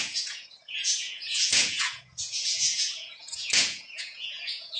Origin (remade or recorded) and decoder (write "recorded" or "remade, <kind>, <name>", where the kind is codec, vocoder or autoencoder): remade, vocoder, Vocos